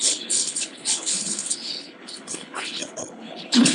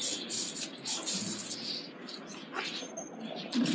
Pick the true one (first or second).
second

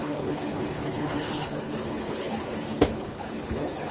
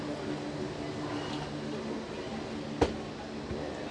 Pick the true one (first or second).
second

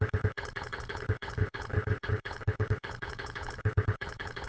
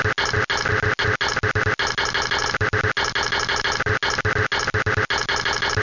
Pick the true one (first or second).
second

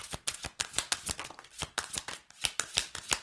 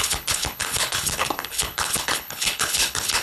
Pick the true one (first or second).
first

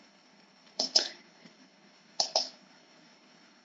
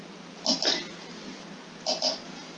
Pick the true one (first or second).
second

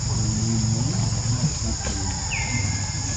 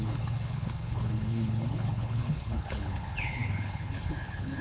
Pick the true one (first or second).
first